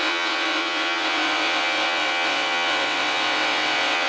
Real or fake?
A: fake